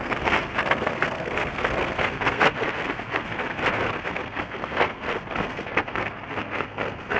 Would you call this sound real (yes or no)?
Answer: no